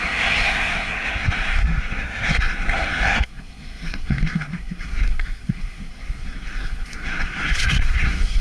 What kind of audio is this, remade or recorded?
remade